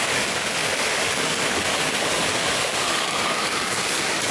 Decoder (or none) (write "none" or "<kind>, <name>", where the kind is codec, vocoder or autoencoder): codec, DAC